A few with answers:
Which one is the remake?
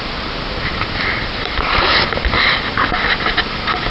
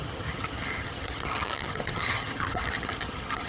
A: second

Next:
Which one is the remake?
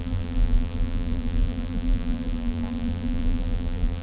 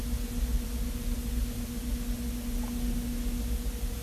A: first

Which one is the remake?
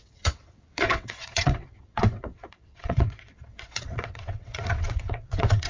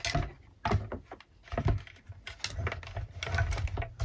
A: first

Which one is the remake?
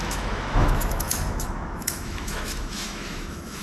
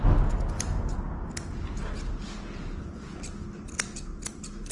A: first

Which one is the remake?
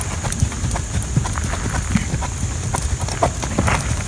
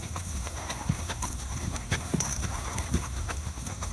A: second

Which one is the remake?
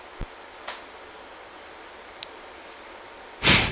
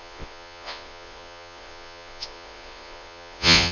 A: second